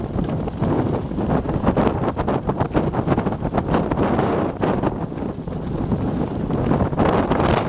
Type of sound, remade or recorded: recorded